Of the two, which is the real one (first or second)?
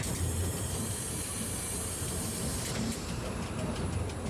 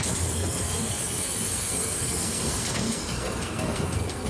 first